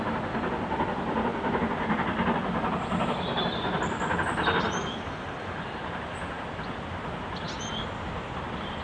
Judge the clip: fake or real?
real